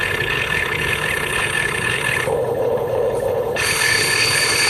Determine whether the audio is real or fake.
fake